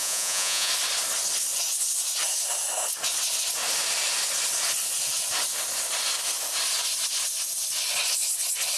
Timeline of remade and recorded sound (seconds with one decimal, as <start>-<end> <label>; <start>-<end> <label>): 0.0-0.7 remade; 0.7-8.8 recorded